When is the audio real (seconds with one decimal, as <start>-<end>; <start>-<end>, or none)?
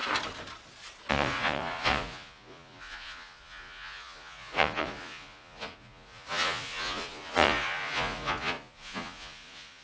0.0-1.1